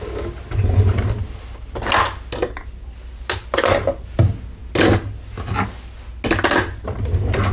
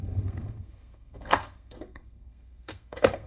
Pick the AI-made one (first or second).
second